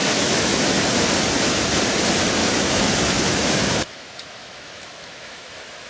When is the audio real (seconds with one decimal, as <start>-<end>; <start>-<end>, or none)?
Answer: 0.8-2.4